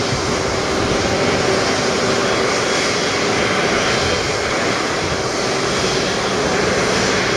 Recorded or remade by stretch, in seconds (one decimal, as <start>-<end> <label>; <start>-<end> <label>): 0.0-7.4 recorded